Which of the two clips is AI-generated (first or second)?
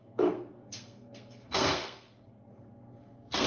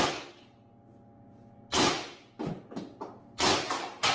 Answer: first